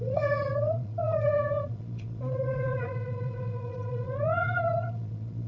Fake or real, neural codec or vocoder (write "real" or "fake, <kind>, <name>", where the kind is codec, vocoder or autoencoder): fake, vocoder, Vocos